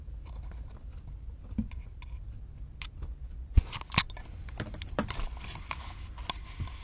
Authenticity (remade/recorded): recorded